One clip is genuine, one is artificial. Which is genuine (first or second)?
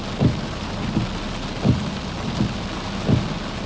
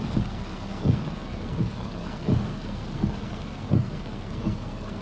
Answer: first